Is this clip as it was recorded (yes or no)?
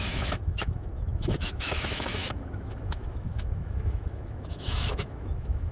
no